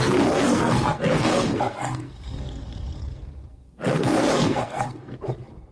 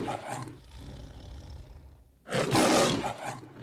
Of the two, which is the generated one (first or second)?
first